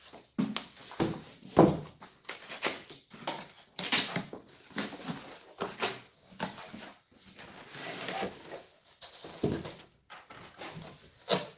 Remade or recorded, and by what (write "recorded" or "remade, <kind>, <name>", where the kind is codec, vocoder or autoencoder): recorded